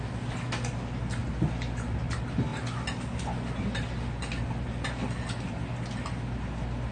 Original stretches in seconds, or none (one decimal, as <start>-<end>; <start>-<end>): 0.0-6.9